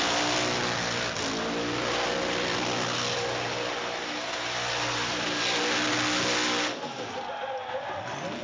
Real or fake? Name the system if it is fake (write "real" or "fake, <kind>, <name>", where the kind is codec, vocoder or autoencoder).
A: real